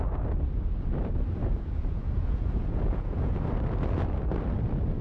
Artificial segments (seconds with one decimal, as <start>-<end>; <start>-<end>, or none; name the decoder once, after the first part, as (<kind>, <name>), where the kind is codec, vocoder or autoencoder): 1.4-3.5 (vocoder, Vocos)